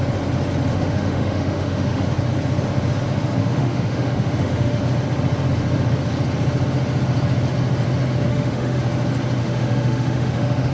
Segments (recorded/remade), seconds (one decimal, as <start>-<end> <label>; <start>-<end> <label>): 0.0-0.7 recorded; 0.7-2.1 remade; 2.1-3.4 recorded; 3.4-4.8 remade; 4.8-8.3 recorded; 8.3-8.8 remade; 8.8-9.4 recorded; 9.4-10.7 remade